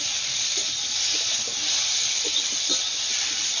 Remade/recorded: recorded